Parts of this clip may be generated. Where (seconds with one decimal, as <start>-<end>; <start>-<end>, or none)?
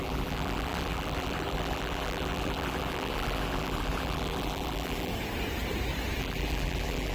0.0-5.1; 6.2-7.1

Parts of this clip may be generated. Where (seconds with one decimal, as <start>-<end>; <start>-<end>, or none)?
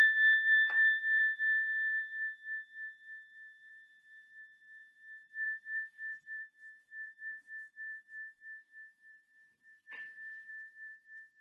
0.0-11.4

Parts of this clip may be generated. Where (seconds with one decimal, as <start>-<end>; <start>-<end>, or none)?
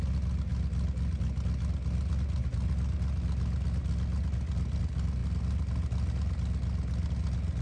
none